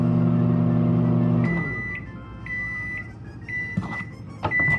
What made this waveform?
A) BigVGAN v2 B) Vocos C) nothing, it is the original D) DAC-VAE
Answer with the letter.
C